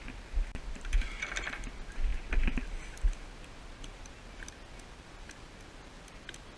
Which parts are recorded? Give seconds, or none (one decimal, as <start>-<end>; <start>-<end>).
0.0-6.6

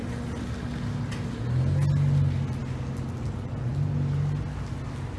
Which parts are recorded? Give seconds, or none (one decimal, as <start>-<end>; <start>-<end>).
0.0-5.2